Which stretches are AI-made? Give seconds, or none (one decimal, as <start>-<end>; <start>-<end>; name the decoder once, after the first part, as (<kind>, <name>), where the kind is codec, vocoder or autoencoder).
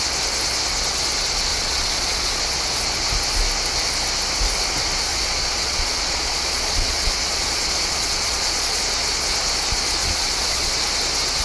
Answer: 1.5-2.4 (vocoder, Vocos); 5.1-8.8; 10.0-10.7